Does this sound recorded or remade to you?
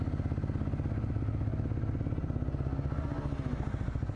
recorded